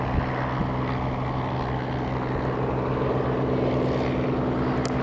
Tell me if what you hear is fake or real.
real